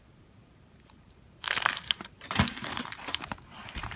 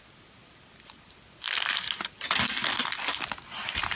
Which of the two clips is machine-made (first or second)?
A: first